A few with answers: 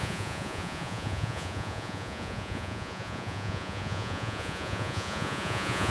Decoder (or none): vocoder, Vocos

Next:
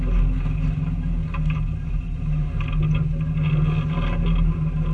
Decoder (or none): none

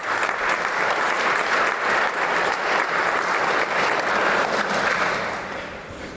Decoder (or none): none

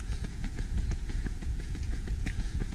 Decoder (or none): vocoder, Vocos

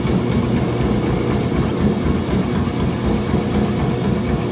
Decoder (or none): none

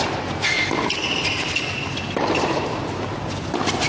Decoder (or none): none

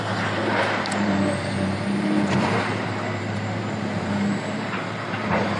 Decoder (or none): vocoder, BigVGAN v2